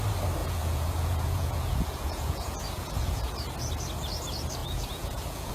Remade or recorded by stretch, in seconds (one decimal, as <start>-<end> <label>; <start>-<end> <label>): 0.0-0.4 recorded; 0.4-3.3 remade; 3.3-4.6 recorded; 4.6-5.5 remade